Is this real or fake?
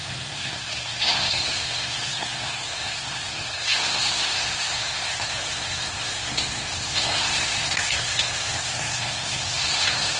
fake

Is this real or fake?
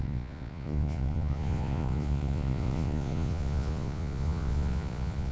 fake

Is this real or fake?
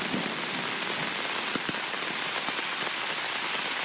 real